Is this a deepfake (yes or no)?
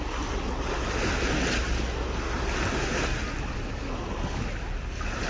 no